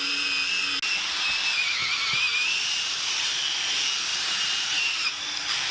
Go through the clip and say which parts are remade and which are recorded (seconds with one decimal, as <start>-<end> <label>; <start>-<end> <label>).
0.0-1.8 recorded; 1.8-3.4 remade; 3.4-4.1 recorded; 4.1-5.2 remade; 5.2-5.7 recorded